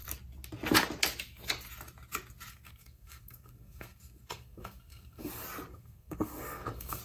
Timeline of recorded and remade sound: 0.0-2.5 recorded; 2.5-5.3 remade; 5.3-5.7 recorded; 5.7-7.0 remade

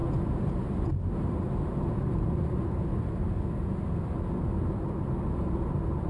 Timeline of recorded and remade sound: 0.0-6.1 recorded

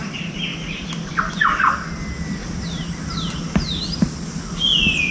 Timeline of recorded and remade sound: 0.0-5.1 recorded